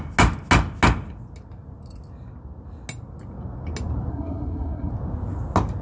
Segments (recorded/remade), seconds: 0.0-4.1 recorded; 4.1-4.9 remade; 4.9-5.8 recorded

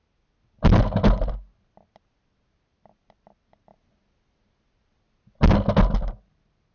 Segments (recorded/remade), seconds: 0.0-6.7 recorded

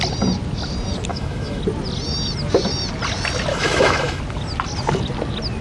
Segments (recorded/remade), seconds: 0.0-1.1 recorded; 1.1-1.6 remade; 1.6-3.5 recorded; 3.5-4.2 remade; 4.2-5.6 recorded

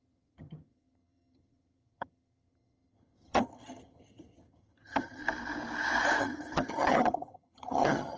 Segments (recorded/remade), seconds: 0.0-5.2 remade; 5.2-6.2 recorded; 6.2-8.2 remade

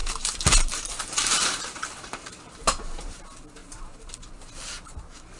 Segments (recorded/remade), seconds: 0.0-3.2 remade; 3.2-3.6 recorded; 3.6-4.3 remade; 4.3-5.4 recorded

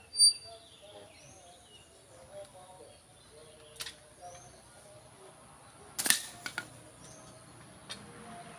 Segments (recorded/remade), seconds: 0.0-8.6 recorded